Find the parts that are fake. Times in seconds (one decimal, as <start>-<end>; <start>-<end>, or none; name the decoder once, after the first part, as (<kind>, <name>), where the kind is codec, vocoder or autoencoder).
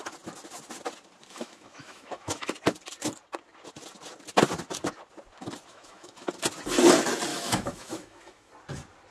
1.3-2.5 (autoencoder, DAC-VAE); 5.7-6.3; 7.3-8.5